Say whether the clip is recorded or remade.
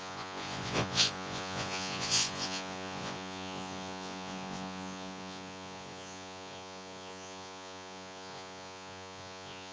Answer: remade